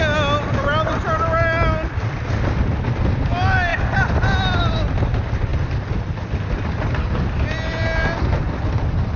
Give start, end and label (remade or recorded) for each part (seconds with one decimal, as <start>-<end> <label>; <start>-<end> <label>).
0.0-9.2 recorded